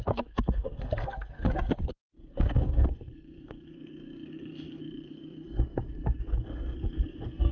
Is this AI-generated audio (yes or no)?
yes